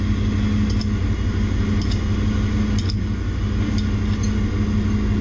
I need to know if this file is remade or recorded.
recorded